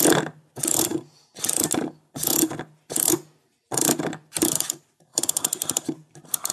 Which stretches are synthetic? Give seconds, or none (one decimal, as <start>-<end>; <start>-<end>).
none